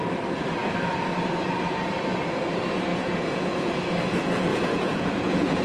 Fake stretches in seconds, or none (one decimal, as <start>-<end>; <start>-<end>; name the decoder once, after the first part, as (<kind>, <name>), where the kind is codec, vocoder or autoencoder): 2.9-3.7 (vocoder, Vocos); 4.5-5.6